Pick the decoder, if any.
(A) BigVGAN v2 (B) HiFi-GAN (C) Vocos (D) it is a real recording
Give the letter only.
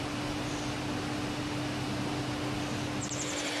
D